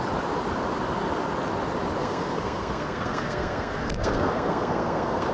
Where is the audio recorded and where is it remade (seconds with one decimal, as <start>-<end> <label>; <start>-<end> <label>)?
0.0-2.0 recorded; 2.0-5.3 remade

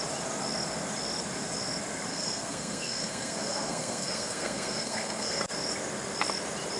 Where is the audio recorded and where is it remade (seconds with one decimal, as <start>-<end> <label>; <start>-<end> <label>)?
0.0-2.1 recorded; 2.1-5.4 remade; 5.4-6.8 recorded

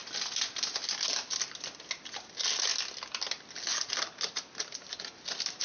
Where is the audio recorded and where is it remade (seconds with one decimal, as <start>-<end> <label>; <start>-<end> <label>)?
0.0-5.6 recorded

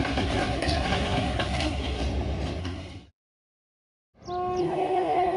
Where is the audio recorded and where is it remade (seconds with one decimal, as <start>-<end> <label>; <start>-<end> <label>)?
0.0-2.0 remade; 2.0-2.6 recorded; 2.6-3.3 remade; 3.3-4.6 recorded; 4.6-5.4 remade